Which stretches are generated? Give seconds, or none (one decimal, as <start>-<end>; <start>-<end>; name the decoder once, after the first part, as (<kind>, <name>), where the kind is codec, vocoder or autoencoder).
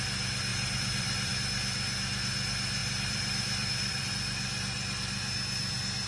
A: 0.5-1.3 (vocoder, BigVGAN v2); 2.8-4.1